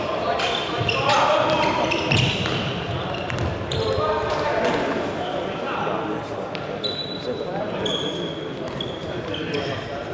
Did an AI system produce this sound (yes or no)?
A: yes